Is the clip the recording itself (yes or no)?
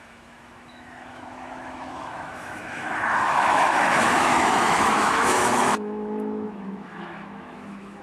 no